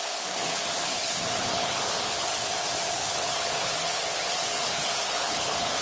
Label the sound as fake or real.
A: fake